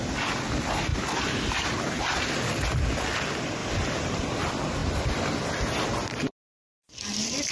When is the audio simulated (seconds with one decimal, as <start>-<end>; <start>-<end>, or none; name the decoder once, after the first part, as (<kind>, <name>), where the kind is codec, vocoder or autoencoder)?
0.9-2.3 (vocoder, BigVGAN v2); 3.6-4.2